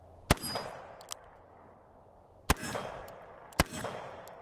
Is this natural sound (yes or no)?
yes